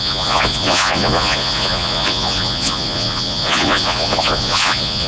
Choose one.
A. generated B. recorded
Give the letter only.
A